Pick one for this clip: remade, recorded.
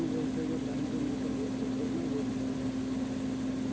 recorded